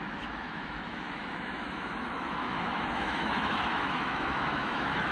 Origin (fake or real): fake